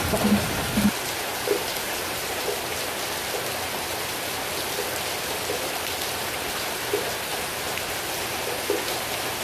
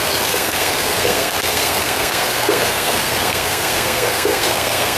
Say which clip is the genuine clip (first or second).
first